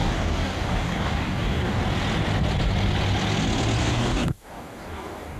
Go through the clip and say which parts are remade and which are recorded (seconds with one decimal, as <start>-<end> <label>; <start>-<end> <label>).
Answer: 0.0-1.8 remade; 1.8-3.8 recorded; 3.8-5.4 remade